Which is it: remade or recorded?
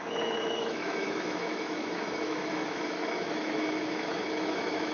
remade